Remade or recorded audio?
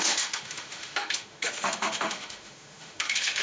remade